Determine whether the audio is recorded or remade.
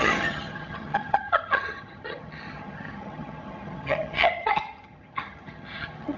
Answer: remade